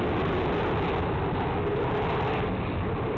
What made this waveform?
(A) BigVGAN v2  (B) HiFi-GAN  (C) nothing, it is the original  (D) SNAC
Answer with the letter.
C